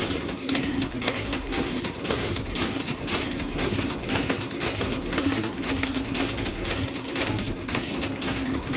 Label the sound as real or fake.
fake